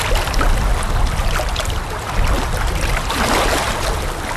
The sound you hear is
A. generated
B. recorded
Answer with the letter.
B